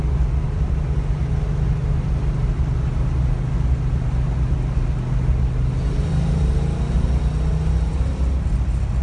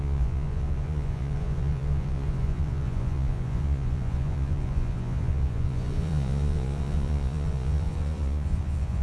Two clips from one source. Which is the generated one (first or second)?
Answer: second